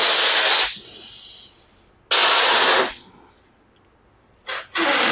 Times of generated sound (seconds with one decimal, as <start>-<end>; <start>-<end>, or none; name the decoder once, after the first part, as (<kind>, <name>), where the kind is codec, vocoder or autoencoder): none